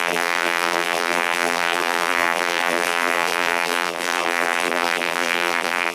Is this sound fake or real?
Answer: fake